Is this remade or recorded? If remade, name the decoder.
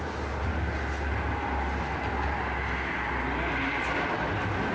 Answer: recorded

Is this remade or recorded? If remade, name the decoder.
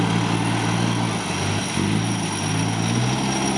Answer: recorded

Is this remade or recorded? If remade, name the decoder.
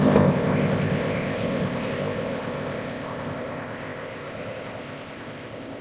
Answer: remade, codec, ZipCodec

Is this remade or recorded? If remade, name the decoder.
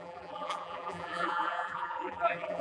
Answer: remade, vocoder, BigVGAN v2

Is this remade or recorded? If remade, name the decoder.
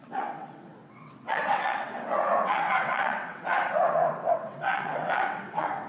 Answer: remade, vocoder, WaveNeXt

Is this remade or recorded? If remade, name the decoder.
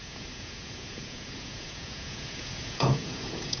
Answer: remade, vocoder, Vocos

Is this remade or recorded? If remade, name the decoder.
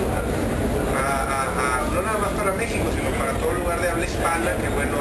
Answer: recorded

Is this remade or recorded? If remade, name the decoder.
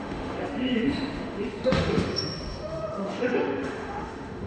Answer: remade, autoencoder, DAC-VAE